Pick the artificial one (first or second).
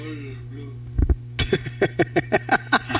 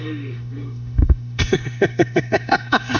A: second